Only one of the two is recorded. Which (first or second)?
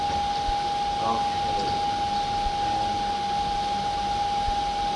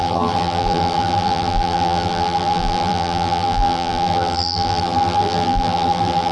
first